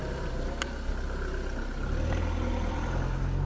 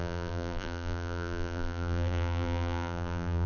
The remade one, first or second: second